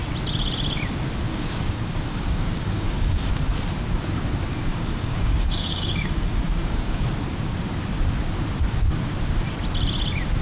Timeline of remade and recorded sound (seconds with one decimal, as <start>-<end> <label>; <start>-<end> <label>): 0.0-1.3 recorded; 1.3-3.3 remade; 3.3-4.7 recorded; 4.7-7.1 remade; 7.1-10.4 recorded